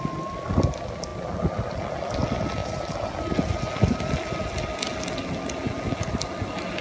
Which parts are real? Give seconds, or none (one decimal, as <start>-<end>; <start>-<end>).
0.0-6.8